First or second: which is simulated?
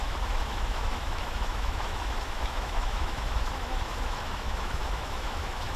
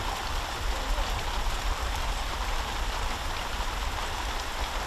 first